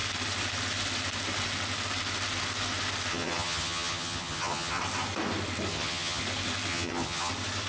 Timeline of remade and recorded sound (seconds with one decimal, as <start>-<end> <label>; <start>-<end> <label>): 0.0-3.1 recorded; 3.1-4.8 remade; 4.8-5.7 recorded; 5.7-6.2 remade; 6.2-6.7 recorded; 6.7-7.3 remade; 7.3-7.7 recorded